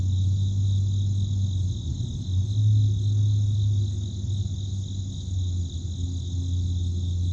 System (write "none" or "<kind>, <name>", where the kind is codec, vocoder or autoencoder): none